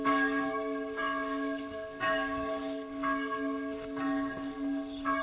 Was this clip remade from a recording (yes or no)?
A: yes